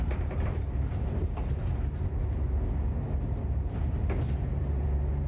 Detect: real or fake real